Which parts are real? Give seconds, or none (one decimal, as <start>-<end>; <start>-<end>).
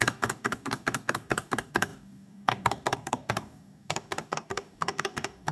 none